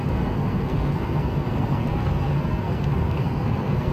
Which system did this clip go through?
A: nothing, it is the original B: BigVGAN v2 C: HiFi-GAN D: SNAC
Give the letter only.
D